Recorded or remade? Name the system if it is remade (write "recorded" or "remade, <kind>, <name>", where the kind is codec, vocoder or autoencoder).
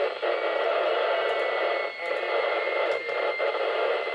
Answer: recorded